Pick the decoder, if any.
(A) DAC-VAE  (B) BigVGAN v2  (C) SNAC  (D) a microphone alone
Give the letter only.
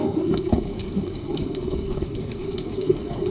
C